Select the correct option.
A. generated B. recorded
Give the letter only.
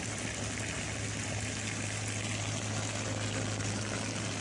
B